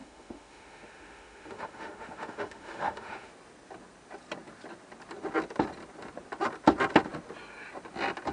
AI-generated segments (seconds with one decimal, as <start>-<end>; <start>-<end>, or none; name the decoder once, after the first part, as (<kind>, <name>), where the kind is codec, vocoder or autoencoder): 0.0-3.3 (autoencoder, DAC-VAE)